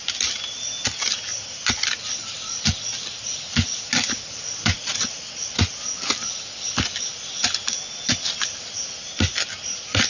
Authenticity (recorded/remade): recorded